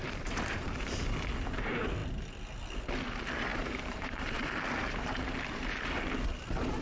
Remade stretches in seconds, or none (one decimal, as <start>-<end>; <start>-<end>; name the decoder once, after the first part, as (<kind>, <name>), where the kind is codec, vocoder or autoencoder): 0.0-1.0 (vocoder, BigVGAN v2); 3.5-4.4